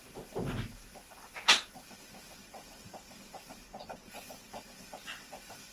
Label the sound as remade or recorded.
recorded